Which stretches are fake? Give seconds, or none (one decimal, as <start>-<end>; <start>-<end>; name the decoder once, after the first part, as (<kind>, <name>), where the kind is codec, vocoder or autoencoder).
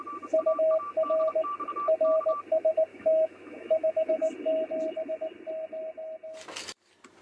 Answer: 2.9-4.3 (autoencoder, DAC-VAE)